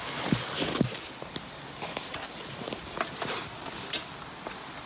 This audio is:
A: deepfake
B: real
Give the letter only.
B